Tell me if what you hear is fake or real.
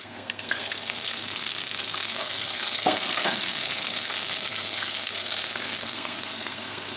fake